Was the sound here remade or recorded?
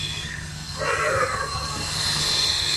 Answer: remade